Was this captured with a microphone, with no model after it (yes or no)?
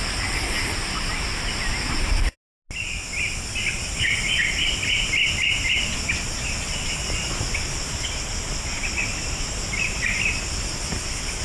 yes